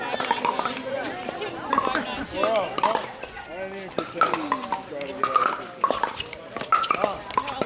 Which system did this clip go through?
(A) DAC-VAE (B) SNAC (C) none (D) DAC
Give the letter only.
C